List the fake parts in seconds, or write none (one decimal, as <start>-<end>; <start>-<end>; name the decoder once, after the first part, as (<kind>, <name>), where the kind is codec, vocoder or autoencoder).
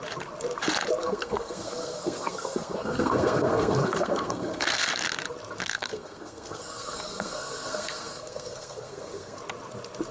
1.0-4.9 (codec, SNAC); 5.6-9.4